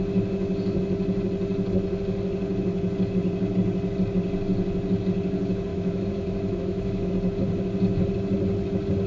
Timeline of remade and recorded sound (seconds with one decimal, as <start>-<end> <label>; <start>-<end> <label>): 0.0-5.7 recorded; 5.7-7.1 remade; 7.1-9.1 recorded